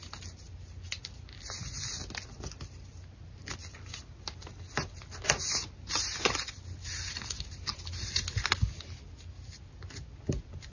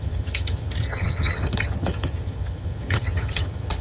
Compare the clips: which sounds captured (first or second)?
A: first